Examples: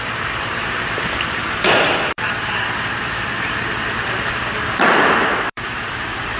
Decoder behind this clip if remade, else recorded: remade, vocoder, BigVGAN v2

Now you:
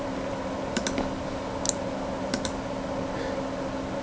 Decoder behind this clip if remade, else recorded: recorded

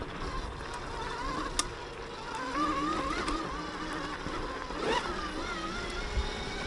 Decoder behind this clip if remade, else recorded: recorded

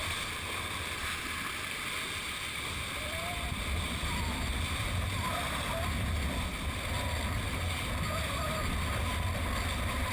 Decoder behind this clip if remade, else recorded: recorded